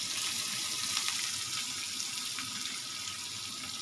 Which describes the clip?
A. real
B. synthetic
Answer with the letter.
A